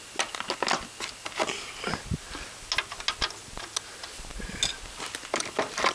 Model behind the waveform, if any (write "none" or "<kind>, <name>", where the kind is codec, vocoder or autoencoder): none